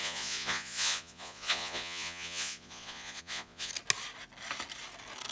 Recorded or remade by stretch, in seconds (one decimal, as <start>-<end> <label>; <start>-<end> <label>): 0.0-3.7 remade; 3.7-5.3 recorded